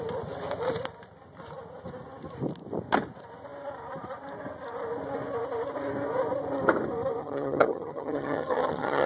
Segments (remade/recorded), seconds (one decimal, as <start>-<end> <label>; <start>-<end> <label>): 0.0-7.2 recorded; 7.2-9.1 remade